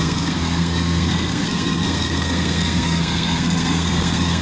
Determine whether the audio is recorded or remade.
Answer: remade